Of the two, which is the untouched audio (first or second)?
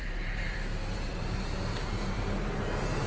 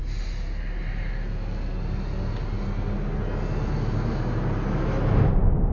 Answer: second